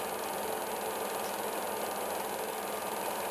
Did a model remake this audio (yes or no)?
no